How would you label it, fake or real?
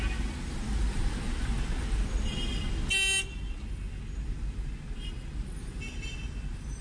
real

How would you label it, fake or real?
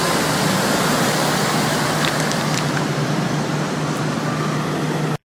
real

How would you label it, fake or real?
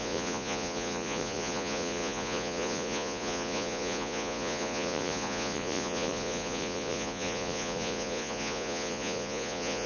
fake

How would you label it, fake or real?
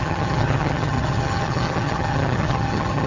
fake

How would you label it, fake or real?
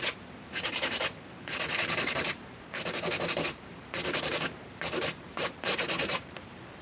fake